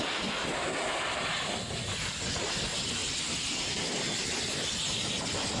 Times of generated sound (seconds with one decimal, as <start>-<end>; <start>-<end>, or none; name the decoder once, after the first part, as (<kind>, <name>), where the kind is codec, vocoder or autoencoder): none

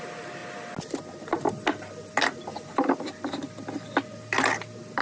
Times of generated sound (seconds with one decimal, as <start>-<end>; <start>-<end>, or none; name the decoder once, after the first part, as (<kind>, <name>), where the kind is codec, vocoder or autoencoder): none

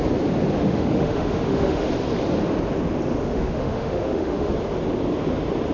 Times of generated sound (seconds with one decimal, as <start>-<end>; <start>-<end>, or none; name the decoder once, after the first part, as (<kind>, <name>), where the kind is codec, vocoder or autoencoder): 0.6-1.9 (autoencoder, DAC-VAE); 3.2-4.5

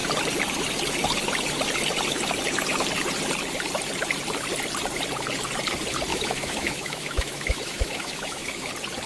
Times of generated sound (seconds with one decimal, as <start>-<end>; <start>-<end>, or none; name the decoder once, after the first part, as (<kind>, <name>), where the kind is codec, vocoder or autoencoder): 6.1-8.7 (autoencoder, DAC-VAE)

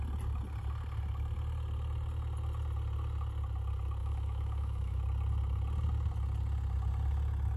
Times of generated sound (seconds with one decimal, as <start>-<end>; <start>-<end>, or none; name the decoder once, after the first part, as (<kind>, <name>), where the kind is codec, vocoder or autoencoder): 4.0-5.0 (autoencoder, DAC-VAE)